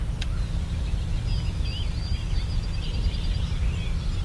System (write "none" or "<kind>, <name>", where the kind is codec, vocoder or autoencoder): none